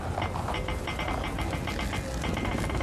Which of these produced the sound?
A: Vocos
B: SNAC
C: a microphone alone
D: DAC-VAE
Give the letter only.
C